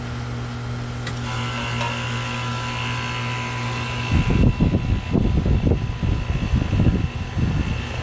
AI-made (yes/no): no